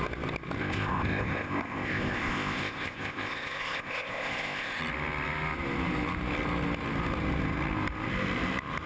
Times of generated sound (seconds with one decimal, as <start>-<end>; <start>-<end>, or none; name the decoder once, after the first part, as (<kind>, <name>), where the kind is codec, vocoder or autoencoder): 0.6-4.8 (codec, ZipCodec)